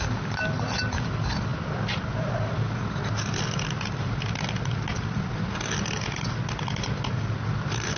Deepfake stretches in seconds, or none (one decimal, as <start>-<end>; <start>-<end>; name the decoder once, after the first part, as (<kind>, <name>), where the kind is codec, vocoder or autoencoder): none